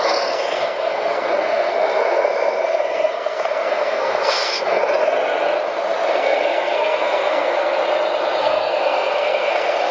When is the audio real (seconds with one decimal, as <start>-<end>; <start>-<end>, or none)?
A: 4.8-6.1; 7.8-8.4